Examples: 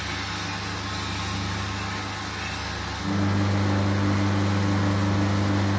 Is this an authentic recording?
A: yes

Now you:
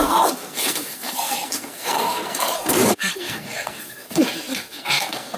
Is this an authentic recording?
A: no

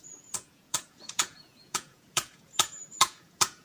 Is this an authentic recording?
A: no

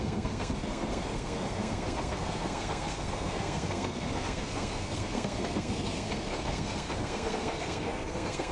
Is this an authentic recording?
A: no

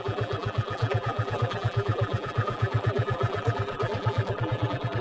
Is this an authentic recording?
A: no